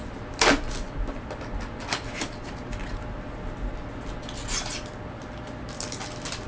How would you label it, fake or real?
real